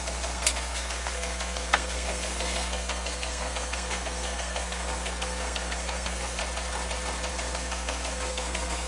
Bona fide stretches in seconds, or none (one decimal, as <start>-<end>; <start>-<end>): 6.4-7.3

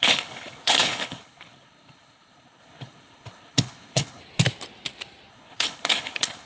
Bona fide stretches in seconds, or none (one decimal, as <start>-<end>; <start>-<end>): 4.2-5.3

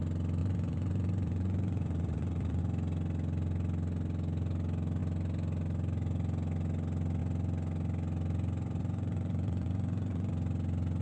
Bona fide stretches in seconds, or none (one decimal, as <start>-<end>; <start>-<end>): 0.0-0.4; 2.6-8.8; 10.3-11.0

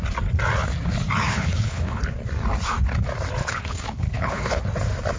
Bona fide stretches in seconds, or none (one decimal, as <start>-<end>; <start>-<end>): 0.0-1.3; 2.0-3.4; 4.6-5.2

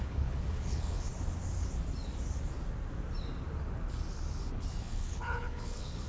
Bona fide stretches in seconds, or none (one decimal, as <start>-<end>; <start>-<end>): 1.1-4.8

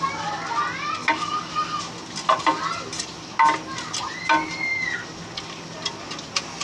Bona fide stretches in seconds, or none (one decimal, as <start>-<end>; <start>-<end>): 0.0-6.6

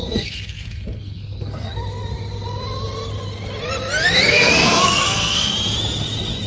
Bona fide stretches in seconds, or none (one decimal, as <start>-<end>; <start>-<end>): 1.7-4.3; 5.5-6.5

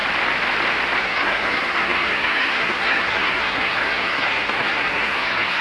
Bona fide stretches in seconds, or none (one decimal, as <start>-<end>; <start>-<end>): 0.0-1.0